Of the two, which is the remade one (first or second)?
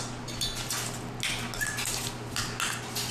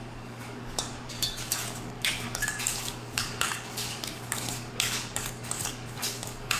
second